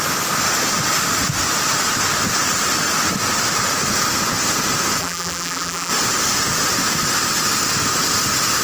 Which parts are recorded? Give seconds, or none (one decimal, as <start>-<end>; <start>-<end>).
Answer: 0.0-5.0; 5.9-8.6